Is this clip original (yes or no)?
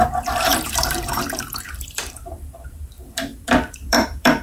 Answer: no